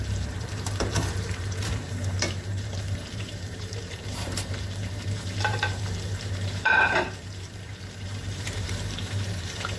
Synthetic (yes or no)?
yes